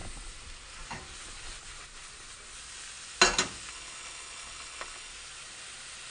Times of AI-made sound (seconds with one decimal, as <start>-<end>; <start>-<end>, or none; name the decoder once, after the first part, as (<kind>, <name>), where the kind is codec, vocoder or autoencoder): 3.7-5.1 (codec, HILCodec)